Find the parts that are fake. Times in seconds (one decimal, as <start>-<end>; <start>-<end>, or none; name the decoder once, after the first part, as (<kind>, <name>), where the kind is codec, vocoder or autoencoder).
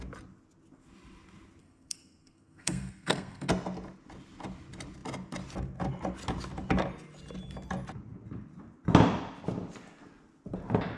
1.6-3.5 (codec, SNAC)